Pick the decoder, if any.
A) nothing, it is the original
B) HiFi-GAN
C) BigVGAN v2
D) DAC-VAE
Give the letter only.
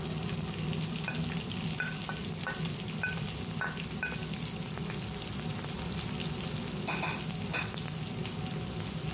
A